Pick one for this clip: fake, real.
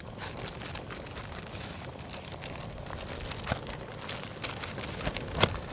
real